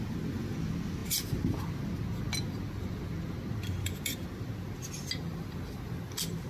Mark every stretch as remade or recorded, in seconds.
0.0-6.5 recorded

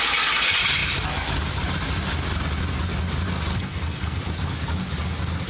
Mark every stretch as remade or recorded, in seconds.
0.0-3.5 recorded; 3.5-4.2 remade; 4.2-5.5 recorded

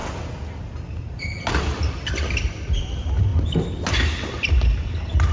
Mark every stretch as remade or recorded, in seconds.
0.0-5.3 recorded

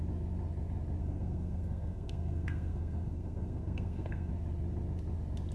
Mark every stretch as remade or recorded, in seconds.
0.0-1.0 recorded; 1.0-4.3 remade; 4.3-5.5 recorded

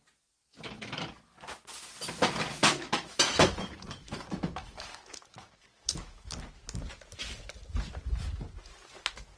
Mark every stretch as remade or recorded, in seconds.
0.0-0.5 recorded; 0.5-1.0 remade; 1.0-2.6 recorded; 2.6-6.3 remade; 6.3-9.4 recorded